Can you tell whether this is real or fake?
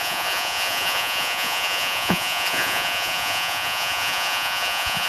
fake